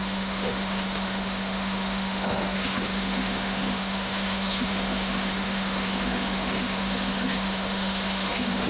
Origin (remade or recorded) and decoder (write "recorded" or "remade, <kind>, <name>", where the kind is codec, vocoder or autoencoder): remade, autoencoder, DAC-VAE